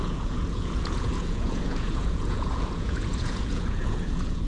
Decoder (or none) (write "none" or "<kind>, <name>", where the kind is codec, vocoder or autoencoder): vocoder, Vocos